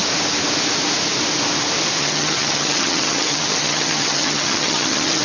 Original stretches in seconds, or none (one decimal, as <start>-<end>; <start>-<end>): 0.0-2.0